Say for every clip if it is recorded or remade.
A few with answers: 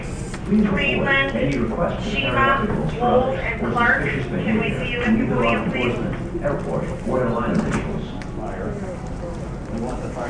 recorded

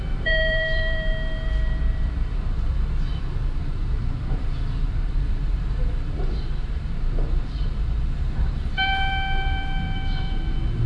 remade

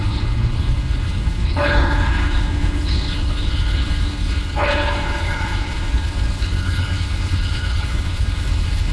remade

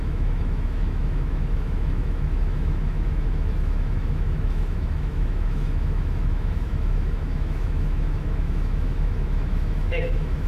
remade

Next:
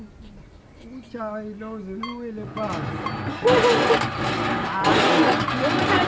recorded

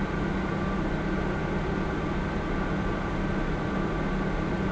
recorded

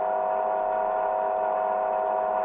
recorded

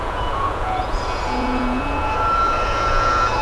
remade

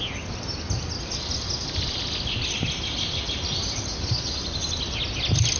recorded